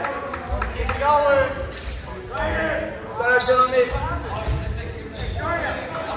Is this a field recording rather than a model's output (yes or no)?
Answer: yes